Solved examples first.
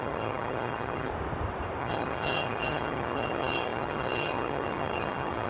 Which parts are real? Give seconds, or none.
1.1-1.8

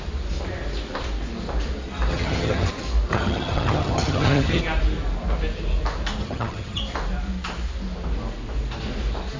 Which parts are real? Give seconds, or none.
0.0-2.1; 2.7-3.1; 4.6-6.2; 6.8-9.4

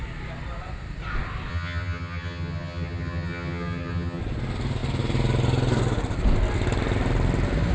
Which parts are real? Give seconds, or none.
0.0-1.5; 4.2-7.7

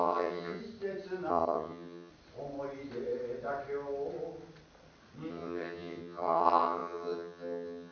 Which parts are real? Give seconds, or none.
0.6-1.3; 2.1-5.3

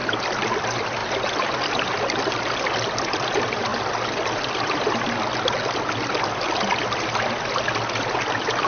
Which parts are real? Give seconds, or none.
0.0-8.7

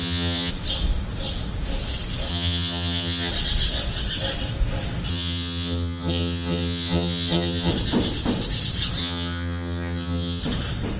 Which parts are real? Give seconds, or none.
0.5-2.3; 3.3-5.1; 7.7-9.0; 10.4-11.0

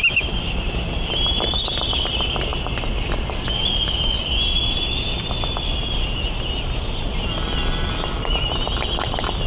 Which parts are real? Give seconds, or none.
0.0-9.5

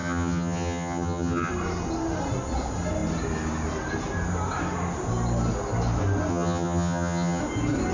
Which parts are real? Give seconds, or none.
1.5-6.3; 7.4-7.9